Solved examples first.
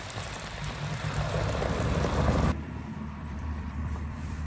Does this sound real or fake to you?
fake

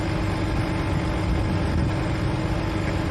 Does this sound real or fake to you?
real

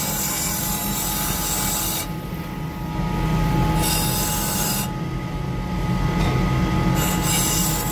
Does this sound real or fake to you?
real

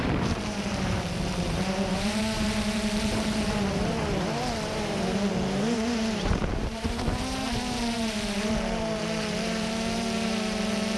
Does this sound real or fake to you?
fake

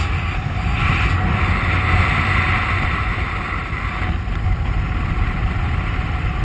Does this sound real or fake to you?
real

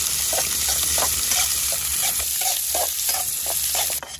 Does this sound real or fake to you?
fake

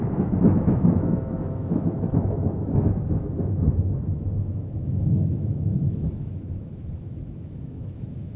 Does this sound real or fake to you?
fake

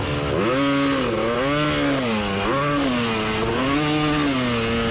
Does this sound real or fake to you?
real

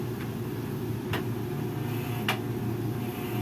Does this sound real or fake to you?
real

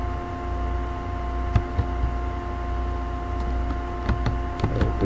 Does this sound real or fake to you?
real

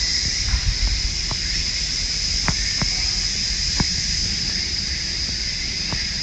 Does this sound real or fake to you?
real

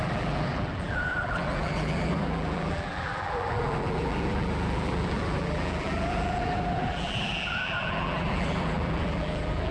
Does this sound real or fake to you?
fake